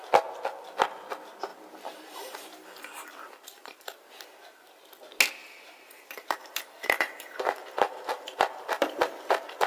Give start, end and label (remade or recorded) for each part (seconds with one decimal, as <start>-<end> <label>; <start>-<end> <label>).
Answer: 0.0-1.5 recorded; 1.5-4.1 remade; 4.1-5.4 recorded; 5.4-9.7 remade